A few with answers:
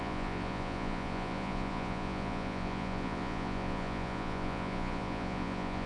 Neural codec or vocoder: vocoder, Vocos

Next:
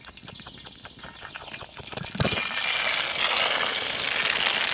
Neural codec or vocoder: none